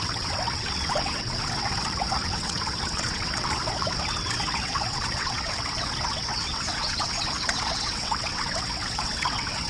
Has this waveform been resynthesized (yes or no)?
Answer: yes